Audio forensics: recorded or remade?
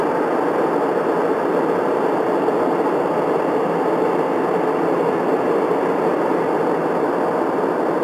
recorded